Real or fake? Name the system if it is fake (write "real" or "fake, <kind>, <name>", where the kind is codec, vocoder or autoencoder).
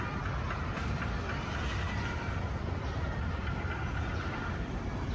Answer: real